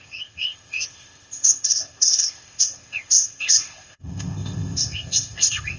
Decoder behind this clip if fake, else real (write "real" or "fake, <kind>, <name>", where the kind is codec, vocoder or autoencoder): fake, codec, ZipCodec